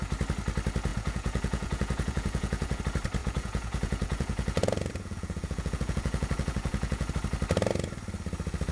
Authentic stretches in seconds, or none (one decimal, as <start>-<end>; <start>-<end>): 0.0-0.9; 2.8-3.2; 7.1-8.7